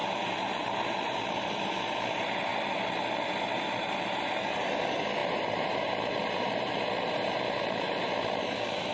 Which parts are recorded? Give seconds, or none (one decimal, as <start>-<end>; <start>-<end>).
0.0-8.9